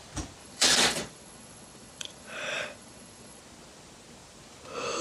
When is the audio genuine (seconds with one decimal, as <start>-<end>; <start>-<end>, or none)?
0.0-0.4; 3.4-5.0